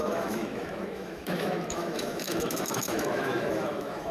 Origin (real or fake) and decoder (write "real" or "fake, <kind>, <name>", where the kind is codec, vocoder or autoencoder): fake, autoencoder, DAC-VAE